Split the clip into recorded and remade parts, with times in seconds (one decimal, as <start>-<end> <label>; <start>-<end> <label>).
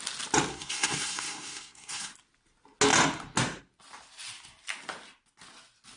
0.0-0.5 recorded; 0.5-2.1 remade; 2.1-6.0 recorded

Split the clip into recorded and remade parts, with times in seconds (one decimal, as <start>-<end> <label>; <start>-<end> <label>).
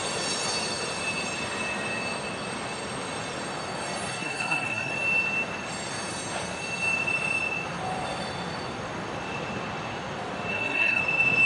0.0-4.1 recorded; 4.1-4.9 remade; 4.9-10.5 recorded; 10.5-11.0 remade; 11.0-11.5 recorded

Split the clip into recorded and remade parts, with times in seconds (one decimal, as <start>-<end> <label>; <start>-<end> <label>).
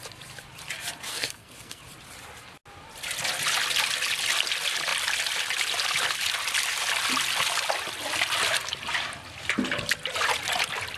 0.0-1.1 recorded; 1.1-1.8 remade; 1.8-11.0 recorded